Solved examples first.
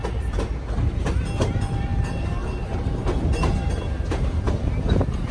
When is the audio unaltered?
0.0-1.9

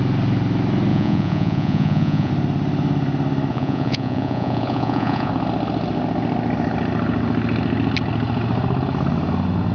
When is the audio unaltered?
0.0-0.9; 2.3-3.5; 5.3-9.7

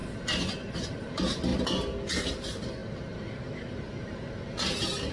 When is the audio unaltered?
0.0-5.1

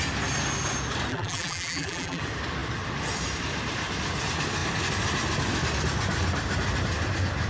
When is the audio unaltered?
0.0-1.1; 2.2-7.5